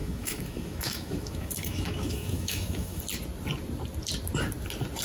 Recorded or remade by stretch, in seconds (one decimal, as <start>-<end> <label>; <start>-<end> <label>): 0.0-3.0 remade; 3.0-5.0 recorded